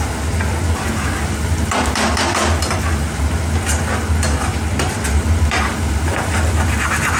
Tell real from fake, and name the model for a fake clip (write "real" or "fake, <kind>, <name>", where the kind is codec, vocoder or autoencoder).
real